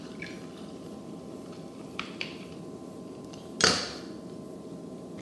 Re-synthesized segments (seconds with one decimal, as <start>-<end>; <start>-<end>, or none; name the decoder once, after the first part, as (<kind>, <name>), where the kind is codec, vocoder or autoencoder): 0.0-2.8 (vocoder, BigVGAN v2)